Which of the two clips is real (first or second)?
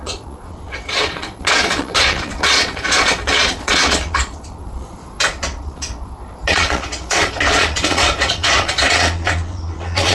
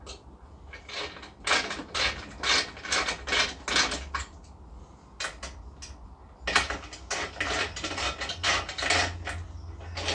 second